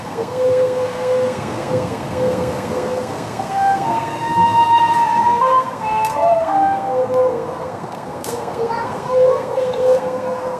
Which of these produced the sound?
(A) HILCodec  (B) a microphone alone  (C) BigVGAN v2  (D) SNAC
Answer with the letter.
D